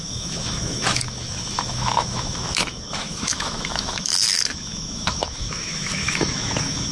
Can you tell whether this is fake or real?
fake